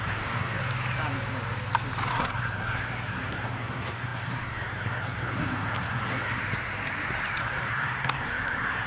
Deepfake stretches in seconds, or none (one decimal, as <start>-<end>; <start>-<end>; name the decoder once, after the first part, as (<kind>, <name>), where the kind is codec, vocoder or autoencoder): 0.0-0.6 (codec, SNAC); 2.1-6.4; 7.4-8.9